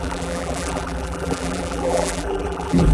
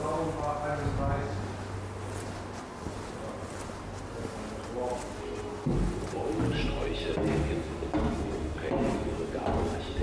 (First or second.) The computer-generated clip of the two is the first